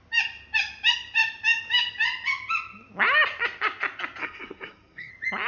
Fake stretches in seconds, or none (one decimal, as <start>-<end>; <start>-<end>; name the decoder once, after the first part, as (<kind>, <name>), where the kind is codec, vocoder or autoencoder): 4.2-5.1 (codec, SNAC)